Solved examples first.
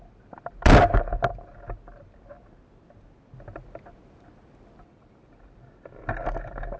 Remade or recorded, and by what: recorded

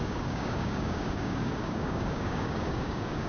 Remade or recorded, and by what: remade, codec, DAC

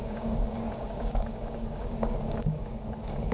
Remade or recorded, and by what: remade, codec, DAC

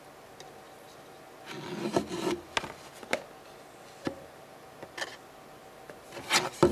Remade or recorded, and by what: recorded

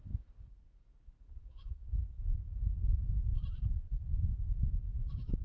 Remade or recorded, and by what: remade, codec, DAC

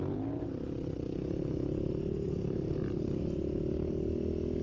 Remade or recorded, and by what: recorded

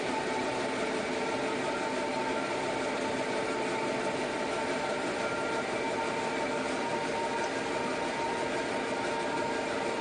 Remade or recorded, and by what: recorded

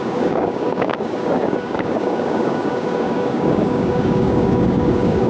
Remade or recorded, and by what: remade, codec, DAC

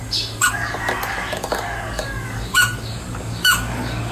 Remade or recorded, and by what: remade, codec, DAC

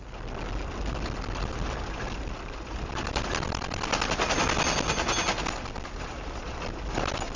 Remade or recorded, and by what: recorded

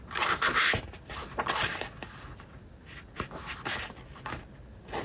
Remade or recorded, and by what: recorded